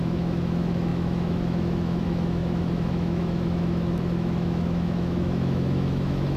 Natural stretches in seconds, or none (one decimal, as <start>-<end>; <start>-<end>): none